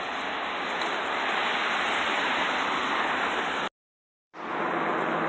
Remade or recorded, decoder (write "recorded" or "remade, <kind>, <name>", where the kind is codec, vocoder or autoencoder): recorded